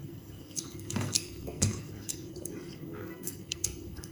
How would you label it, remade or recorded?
remade